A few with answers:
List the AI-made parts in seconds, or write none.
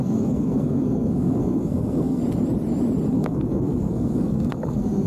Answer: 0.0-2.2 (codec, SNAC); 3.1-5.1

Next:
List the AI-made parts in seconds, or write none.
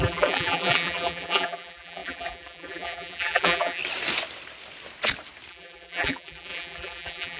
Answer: 0.0-3.8 (vocoder, BigVGAN v2); 5.5-7.4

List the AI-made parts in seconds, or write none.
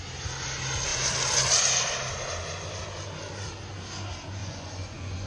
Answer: 4.4-5.3 (vocoder, Vocos)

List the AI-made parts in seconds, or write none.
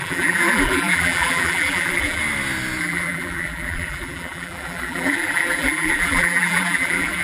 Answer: 0.0-2.2 (vocoder, BigVGAN v2); 2.8-7.2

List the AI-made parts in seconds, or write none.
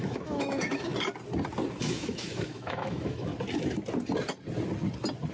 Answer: 0.0-0.9 (autoencoder, DAC-VAE); 1.8-3.3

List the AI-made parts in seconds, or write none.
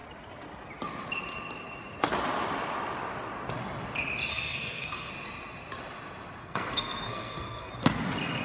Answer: 4.3-5.1 (codec, SNAC); 6.4-7.7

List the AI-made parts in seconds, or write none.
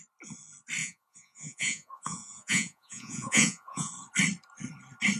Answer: 0.8-3.9 (vocoder, Vocos)